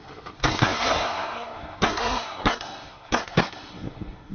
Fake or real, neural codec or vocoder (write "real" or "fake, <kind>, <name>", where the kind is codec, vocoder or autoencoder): fake, codec, SNAC